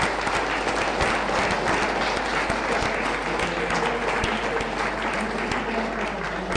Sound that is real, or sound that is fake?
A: real